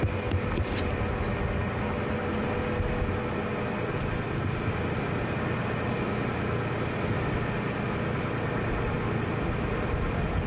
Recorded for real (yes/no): yes